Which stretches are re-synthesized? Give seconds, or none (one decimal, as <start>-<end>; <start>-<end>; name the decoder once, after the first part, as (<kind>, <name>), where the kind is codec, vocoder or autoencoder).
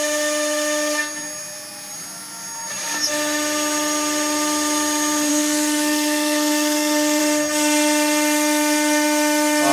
5.3-7.2 (codec, SNAC)